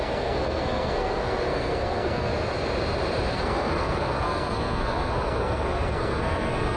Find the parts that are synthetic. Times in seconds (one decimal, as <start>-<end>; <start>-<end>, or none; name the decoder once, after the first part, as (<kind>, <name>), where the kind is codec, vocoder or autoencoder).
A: 0.0-2.3 (codec, SNAC); 3.3-6.8